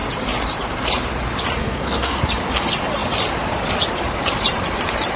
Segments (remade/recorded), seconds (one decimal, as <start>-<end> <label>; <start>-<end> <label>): 0.0-1.6 recorded; 1.6-2.2 remade; 2.2-5.2 recorded